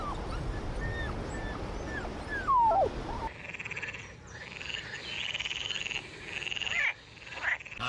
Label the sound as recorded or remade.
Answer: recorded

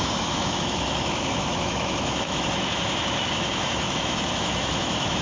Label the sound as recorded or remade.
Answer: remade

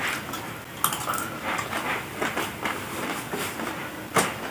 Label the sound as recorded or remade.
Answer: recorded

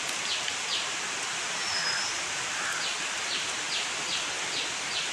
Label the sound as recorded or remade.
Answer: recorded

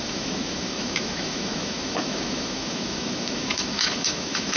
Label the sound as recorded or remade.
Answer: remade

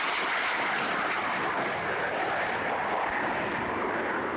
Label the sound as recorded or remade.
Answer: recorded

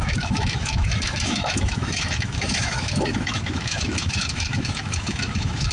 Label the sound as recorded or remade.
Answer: remade